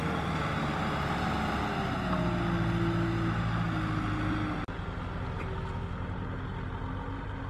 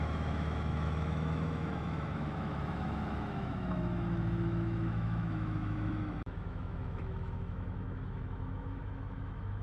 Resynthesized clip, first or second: second